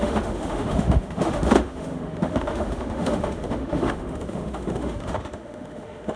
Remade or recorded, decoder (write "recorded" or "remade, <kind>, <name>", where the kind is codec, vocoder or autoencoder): remade, autoencoder, DAC-VAE